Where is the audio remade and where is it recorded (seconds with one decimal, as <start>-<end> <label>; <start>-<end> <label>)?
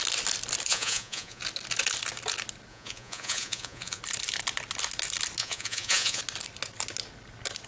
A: 0.0-0.7 recorded; 0.7-1.4 remade; 1.4-2.7 recorded; 2.7-4.0 remade; 4.0-5.4 recorded; 5.4-6.2 remade; 6.2-7.7 recorded